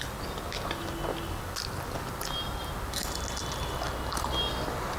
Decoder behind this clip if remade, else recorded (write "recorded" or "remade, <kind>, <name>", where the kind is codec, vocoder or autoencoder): recorded